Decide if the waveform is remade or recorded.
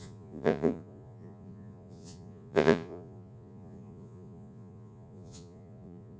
remade